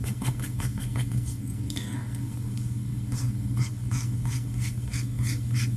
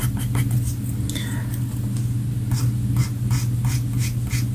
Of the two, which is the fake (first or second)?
first